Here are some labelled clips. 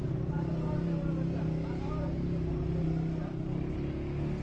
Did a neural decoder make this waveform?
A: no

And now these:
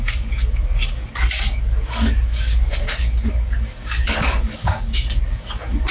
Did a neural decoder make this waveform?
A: yes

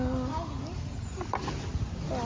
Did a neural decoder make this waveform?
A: no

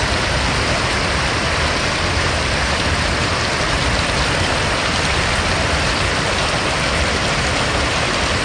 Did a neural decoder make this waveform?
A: yes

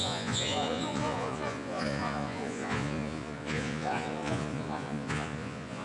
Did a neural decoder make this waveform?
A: yes